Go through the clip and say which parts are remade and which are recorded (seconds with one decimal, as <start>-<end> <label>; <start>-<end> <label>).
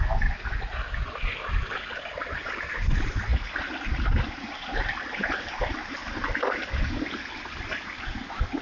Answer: 0.0-8.6 recorded